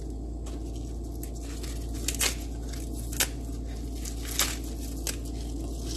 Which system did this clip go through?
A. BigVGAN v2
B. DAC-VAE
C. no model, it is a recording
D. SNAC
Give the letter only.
C